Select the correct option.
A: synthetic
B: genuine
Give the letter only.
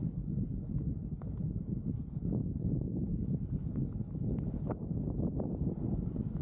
B